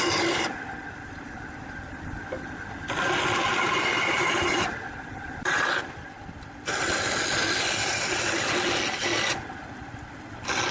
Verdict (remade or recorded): recorded